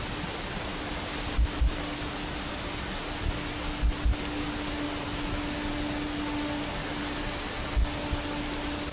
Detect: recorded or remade recorded